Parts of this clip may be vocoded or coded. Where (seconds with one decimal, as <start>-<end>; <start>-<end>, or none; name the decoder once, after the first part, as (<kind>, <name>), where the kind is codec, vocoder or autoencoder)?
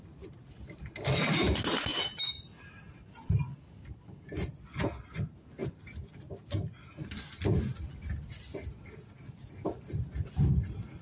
none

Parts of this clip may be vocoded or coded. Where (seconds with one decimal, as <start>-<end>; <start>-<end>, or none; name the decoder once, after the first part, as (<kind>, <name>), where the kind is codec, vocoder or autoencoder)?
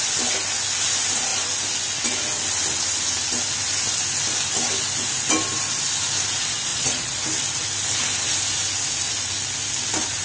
6.7-7.2 (vocoder, Vocos)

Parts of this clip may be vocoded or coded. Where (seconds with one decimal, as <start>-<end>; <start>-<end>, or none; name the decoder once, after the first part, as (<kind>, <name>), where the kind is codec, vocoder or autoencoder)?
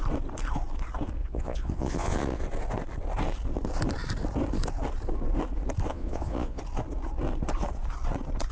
1.2-2.4 (vocoder, Vocos); 5.9-6.6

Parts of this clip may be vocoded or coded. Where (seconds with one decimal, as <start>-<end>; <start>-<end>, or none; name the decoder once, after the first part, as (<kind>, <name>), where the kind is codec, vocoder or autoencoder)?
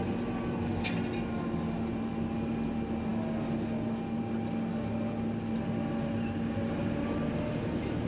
none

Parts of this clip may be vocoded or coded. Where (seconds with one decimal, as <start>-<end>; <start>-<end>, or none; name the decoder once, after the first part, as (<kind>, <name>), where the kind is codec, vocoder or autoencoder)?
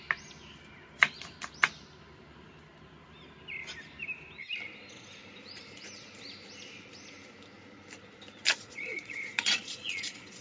8.5-10.4 (vocoder, Vocos)